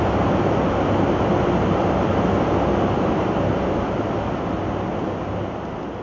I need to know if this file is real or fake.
real